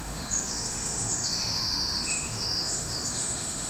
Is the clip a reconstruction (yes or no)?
yes